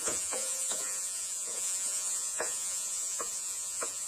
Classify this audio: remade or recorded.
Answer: remade